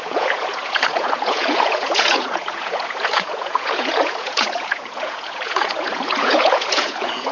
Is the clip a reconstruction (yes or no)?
yes